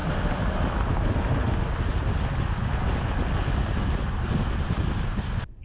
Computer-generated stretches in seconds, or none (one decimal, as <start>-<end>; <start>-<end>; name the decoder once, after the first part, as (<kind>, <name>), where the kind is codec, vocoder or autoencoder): none